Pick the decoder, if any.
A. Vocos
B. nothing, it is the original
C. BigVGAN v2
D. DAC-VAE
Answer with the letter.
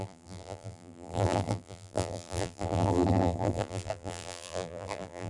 C